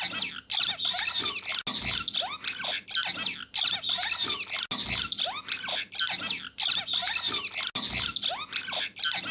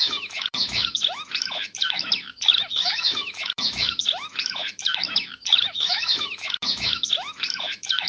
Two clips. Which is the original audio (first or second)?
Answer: first